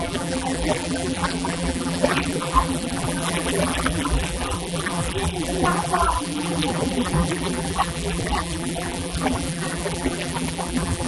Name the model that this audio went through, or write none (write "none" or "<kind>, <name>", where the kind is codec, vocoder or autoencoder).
vocoder, BigVGAN v2